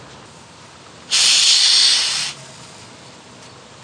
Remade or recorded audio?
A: recorded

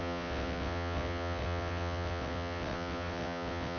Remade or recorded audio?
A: remade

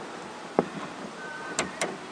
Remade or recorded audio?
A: recorded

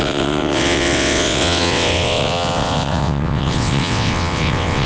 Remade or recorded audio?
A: remade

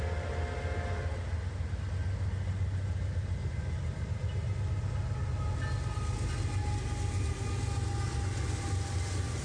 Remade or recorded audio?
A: recorded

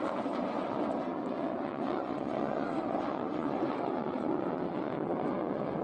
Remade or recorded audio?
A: remade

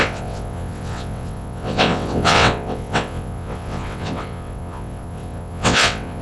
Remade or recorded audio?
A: remade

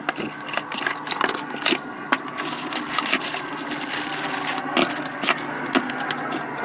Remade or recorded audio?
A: recorded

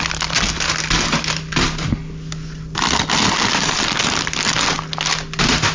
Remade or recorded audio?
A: recorded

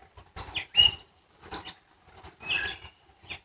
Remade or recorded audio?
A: recorded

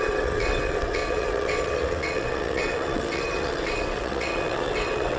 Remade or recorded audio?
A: remade